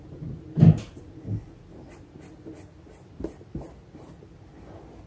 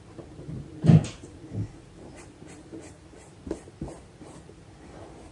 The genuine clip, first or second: first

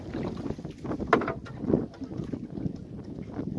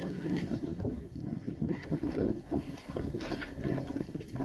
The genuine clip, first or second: first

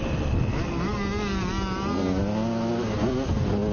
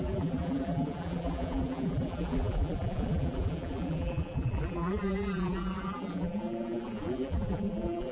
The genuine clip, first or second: first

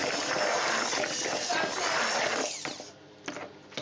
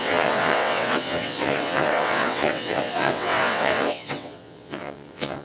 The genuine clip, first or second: first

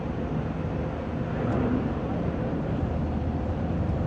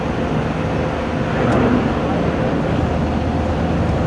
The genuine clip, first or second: second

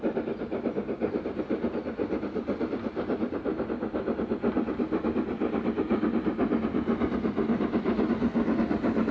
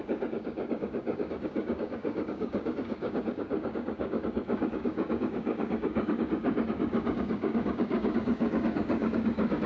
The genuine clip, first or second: first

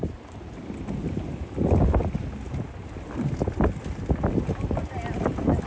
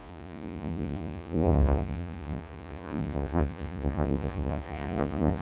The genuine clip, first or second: first